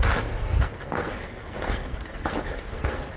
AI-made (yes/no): yes